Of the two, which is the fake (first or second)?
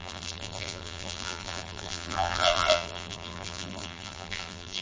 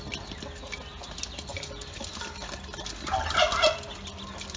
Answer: first